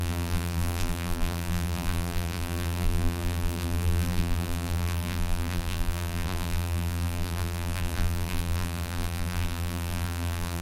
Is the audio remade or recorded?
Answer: remade